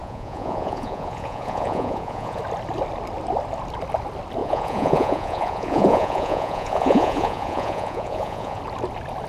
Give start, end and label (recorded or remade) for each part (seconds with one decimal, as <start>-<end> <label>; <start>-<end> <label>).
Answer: 0.0-2.4 remade; 2.4-4.4 recorded; 4.4-8.6 remade; 8.6-9.3 recorded